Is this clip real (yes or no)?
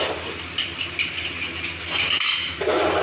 no